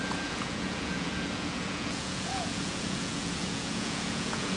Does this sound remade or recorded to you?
remade